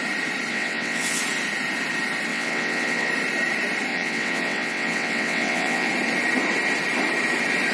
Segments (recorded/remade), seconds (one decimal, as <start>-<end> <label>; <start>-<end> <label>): 0.0-0.5 recorded; 0.5-1.2 remade; 1.2-2.3 recorded; 2.3-3.1 remade; 3.1-3.9 recorded; 3.9-5.9 remade; 5.9-7.7 recorded